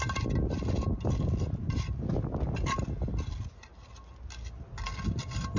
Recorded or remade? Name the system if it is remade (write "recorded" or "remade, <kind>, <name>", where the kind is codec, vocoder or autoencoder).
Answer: recorded